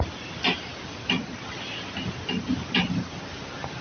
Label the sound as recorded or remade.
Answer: recorded